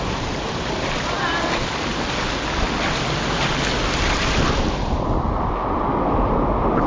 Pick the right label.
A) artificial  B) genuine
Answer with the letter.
B